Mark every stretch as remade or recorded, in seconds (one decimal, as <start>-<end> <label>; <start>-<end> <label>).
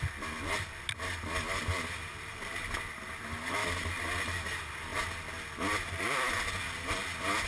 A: 0.0-7.5 recorded